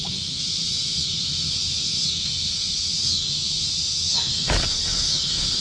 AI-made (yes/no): yes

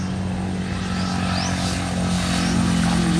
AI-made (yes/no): no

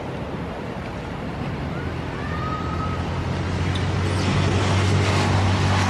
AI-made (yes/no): no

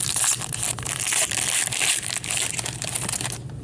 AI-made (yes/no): no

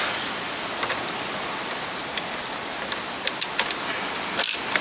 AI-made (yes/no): no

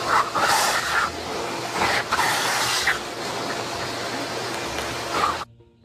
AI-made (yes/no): no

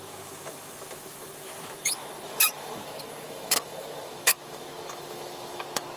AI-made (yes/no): yes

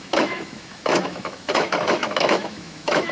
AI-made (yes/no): yes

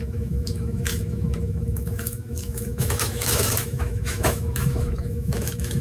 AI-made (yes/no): yes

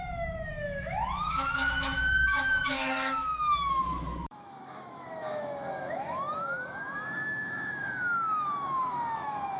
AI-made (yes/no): yes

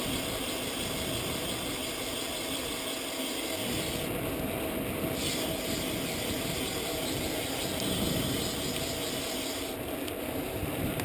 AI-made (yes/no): no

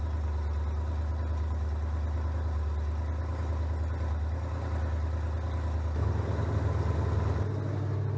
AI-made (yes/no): no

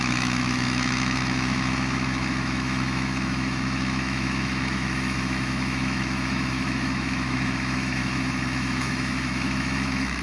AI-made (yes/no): yes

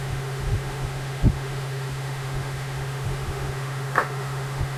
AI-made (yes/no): yes